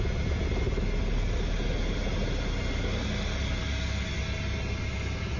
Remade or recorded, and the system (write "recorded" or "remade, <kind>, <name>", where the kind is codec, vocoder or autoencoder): recorded